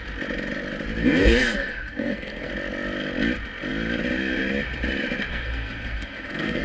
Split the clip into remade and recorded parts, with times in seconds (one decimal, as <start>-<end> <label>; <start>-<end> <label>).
0.0-1.0 recorded; 1.0-2.5 remade; 2.5-5.3 recorded; 5.3-6.6 remade